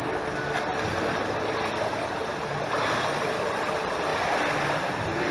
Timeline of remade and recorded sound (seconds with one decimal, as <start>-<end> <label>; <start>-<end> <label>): 0.0-5.3 recorded